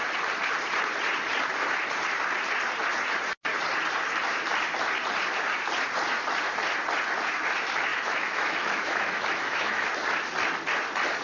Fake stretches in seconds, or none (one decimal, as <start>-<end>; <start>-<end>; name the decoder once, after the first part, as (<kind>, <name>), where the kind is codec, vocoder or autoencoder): 7.9-9.9 (autoencoder, DAC-VAE)